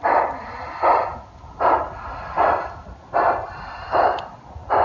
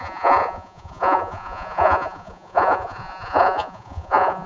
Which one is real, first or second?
first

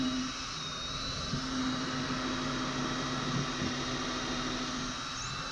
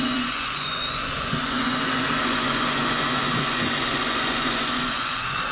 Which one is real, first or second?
first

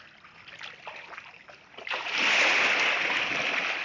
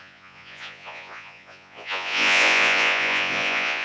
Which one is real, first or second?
first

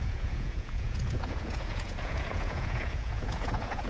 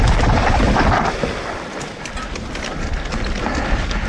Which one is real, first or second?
second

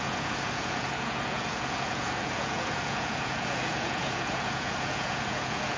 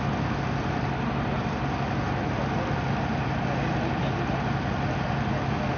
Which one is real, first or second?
second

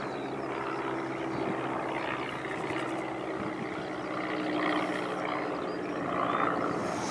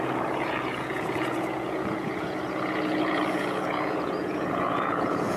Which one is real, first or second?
first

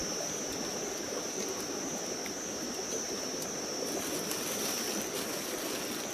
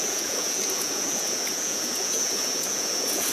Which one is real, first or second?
first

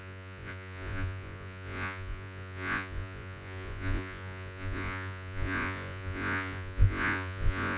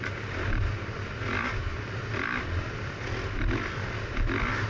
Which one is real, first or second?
second